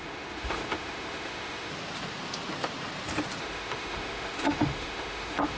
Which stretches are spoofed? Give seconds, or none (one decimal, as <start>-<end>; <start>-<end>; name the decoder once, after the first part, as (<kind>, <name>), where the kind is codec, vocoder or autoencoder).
0.0-1.7 (autoencoder, DAC-VAE); 3.4-5.6

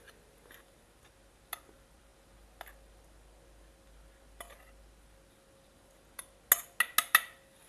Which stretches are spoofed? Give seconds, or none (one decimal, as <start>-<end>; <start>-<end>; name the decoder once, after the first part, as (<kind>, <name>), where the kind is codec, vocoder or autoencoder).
none

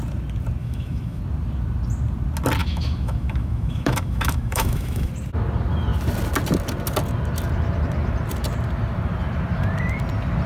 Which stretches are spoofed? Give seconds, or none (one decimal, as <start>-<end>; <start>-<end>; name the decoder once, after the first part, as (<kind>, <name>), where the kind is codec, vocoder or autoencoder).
0.6-1.2 (autoencoder, DAC-VAE); 2.6-5.1